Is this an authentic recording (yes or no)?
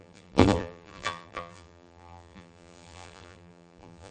no